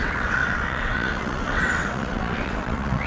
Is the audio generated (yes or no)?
yes